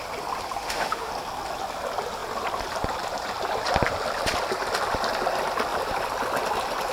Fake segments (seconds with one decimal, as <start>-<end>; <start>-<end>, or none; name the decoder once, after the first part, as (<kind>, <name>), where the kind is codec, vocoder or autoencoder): 0.6-1.1 (autoencoder, DAC-VAE)